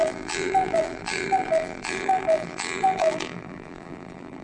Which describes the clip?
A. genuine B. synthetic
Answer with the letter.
B